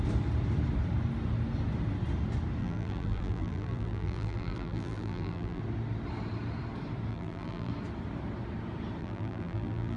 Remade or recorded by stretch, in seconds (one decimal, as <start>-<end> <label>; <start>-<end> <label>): 0.0-2.6 recorded; 2.6-5.6 remade; 5.6-7.1 recorded; 7.1-7.7 remade; 7.7-9.0 recorded; 9.0-10.0 remade